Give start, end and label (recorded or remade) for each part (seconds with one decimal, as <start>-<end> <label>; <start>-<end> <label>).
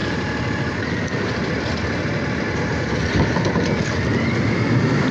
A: 0.0-5.1 recorded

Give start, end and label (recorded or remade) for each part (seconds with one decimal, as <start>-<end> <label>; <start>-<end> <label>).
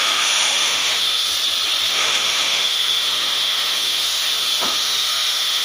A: 0.0-1.3 remade; 1.3-1.9 recorded; 1.9-5.6 remade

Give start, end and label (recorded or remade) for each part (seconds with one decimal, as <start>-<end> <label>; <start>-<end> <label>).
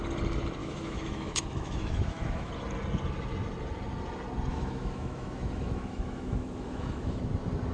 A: 0.0-0.6 recorded; 0.6-2.5 remade; 2.5-4.5 recorded; 4.5-7.2 remade; 7.2-7.7 recorded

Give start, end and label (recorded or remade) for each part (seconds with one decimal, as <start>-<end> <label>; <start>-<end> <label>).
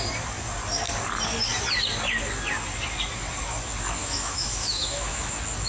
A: 0.0-4.0 recorded; 4.0-5.3 remade; 5.3-5.7 recorded